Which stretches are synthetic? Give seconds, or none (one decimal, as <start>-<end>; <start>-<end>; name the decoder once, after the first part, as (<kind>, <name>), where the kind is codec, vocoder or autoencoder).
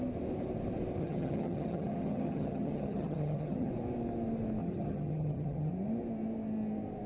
1.0-3.7 (vocoder, HiFi-GAN); 4.6-5.7